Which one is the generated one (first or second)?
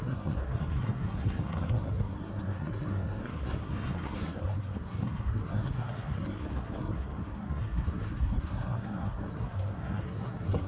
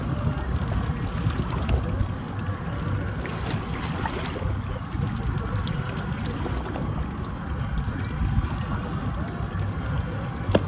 first